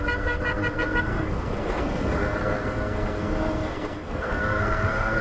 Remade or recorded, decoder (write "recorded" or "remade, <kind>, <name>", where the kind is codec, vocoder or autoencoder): remade, codec, SNAC